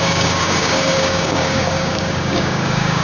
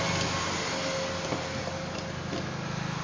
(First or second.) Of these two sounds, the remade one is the first